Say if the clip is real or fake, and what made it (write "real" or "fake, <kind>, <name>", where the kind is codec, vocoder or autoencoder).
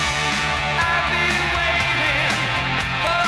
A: fake, vocoder, Vocos